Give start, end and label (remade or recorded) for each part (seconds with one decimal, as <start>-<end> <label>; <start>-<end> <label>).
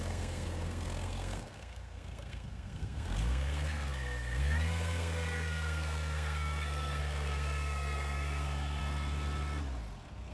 0.0-8.8 remade; 8.8-10.3 recorded